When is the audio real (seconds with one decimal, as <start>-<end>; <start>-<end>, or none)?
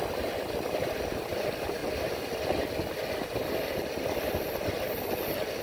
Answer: 1.8-5.6